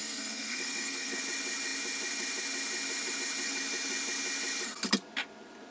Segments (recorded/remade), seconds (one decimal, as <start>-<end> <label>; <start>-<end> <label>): 0.0-1.2 remade; 1.2-5.7 recorded